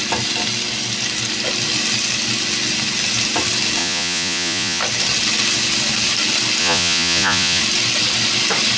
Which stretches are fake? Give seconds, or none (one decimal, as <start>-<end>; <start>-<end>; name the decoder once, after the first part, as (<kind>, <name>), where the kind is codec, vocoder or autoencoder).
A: 3.8-4.8 (vocoder, Vocos); 6.6-7.6